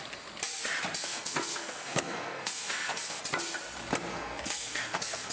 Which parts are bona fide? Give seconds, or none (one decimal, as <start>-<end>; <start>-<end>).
0.0-1.0; 3.2-4.1

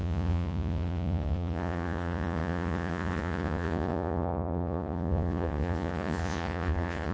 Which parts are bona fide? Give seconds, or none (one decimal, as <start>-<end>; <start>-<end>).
none